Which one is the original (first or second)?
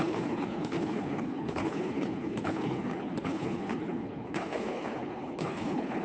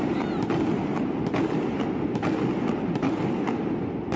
second